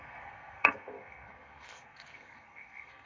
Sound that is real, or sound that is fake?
fake